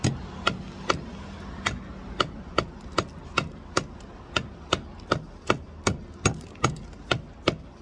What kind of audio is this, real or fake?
real